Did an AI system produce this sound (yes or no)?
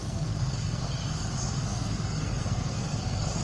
yes